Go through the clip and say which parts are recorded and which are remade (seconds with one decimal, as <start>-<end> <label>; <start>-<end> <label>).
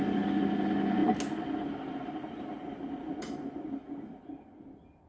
0.0-5.1 recorded